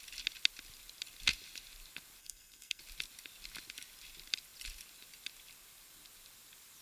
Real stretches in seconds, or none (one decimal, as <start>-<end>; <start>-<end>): 0.0-2.2; 2.8-6.8